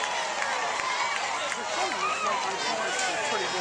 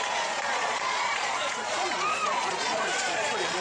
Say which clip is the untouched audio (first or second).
first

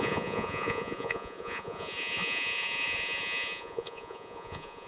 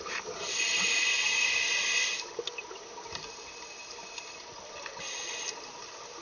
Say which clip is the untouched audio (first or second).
second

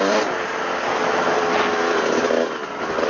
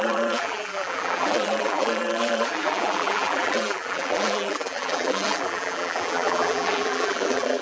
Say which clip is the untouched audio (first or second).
first